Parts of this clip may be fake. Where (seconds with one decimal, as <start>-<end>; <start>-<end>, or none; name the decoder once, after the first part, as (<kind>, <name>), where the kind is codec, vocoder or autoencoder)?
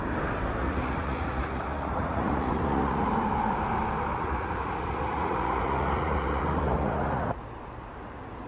0.6-3.1 (vocoder, Vocos); 4.1-7.4